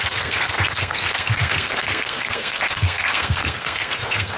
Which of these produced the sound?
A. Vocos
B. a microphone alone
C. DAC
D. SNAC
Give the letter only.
D